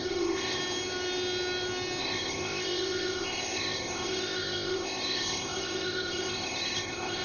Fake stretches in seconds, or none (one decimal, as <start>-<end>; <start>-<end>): 0.0-0.6; 2.0-7.2